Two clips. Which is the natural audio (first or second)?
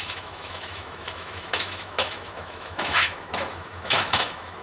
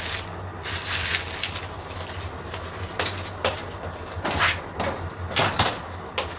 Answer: second